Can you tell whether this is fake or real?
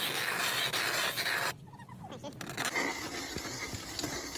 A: real